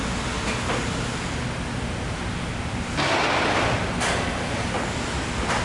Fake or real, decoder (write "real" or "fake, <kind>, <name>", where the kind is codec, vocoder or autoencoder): real